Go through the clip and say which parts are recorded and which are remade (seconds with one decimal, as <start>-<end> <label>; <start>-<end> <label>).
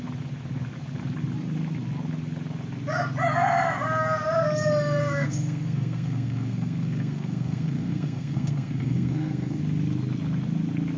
0.0-5.0 recorded; 5.0-9.6 remade; 9.6-11.0 recorded